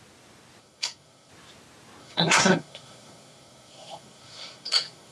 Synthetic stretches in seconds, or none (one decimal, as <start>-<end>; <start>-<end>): 0.6-1.3; 2.0-5.1